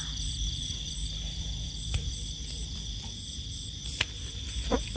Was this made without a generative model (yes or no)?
no